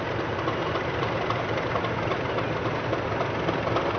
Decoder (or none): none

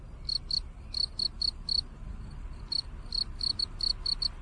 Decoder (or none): none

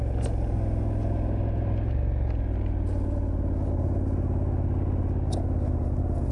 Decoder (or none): none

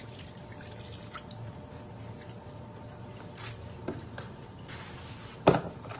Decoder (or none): none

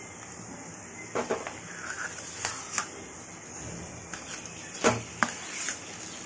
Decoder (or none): none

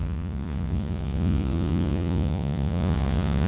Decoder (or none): vocoder, Vocos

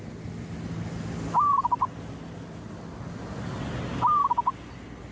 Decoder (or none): none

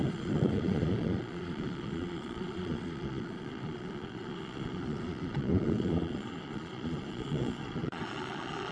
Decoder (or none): vocoder, Vocos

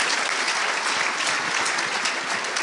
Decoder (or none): none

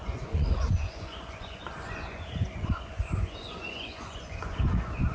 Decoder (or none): vocoder, Vocos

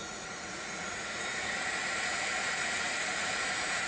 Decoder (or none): vocoder, Vocos